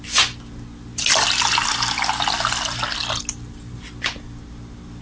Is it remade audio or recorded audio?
recorded